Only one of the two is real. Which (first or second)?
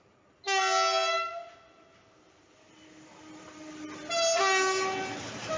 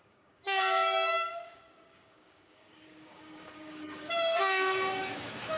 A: first